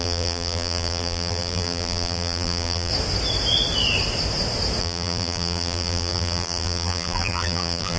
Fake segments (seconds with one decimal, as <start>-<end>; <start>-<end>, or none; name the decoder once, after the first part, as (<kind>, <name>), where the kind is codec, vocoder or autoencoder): 0.0-2.9 (vocoder, BigVGAN v2); 4.8-8.0